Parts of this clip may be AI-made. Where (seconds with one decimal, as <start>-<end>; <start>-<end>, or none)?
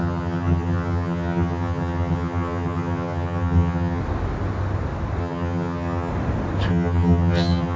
0.0-4.0; 5.2-6.1; 6.7-7.8